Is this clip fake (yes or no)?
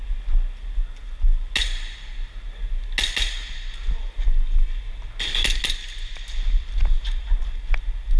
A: no